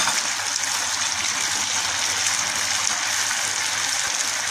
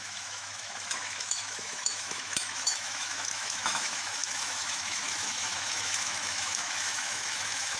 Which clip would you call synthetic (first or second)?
second